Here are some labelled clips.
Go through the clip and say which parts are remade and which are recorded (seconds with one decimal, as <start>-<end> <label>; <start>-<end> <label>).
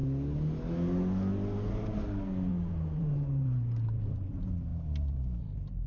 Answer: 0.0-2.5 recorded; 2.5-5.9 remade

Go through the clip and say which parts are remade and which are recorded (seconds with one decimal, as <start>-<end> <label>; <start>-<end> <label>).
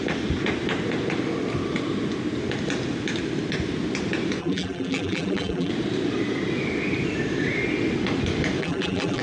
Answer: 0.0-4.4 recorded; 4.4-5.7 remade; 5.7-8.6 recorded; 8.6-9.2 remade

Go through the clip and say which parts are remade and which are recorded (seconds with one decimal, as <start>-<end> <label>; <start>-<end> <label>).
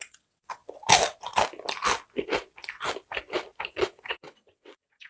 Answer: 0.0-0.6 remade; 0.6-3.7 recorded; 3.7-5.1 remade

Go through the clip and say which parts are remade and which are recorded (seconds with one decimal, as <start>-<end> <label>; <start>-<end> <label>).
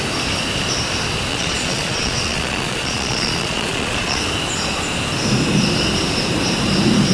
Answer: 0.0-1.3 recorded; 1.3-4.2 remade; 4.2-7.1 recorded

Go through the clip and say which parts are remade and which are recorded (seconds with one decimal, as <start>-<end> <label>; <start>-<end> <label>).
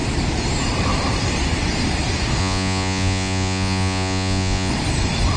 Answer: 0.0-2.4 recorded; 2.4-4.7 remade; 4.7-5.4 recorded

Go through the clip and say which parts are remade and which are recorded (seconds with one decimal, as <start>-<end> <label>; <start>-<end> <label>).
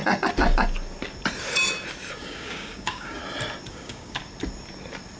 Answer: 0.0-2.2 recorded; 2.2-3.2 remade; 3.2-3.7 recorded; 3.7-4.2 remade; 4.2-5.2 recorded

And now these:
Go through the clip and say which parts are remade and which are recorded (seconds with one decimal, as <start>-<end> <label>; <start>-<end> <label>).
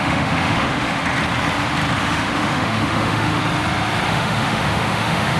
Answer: 0.0-1.0 remade; 1.0-2.0 recorded; 2.0-3.4 remade; 3.4-4.1 recorded; 4.1-5.4 remade